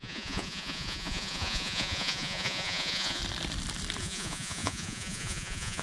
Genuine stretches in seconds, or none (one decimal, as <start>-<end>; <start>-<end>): 3.2-4.0